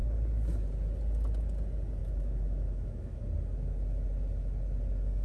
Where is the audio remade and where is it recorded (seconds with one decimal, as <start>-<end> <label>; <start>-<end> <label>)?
0.0-2.0 recorded; 2.0-3.2 remade; 3.2-5.2 recorded